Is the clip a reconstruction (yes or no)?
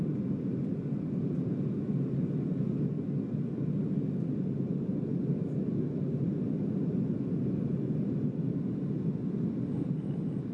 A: no